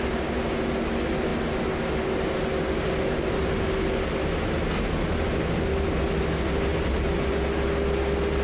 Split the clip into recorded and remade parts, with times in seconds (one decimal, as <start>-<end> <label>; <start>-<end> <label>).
0.0-8.4 recorded